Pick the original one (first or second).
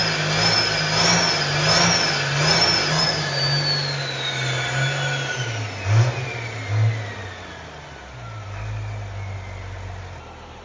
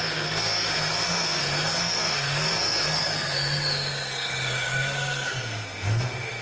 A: first